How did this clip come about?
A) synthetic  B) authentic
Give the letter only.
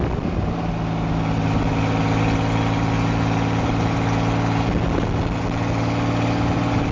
B